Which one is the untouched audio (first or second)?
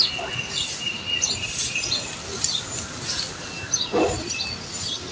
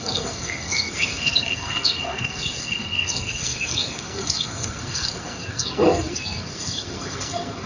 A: first